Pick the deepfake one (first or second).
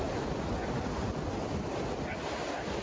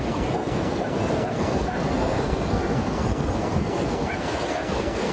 second